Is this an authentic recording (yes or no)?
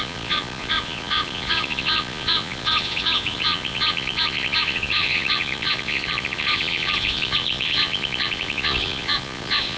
no